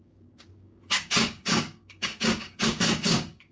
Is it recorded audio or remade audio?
remade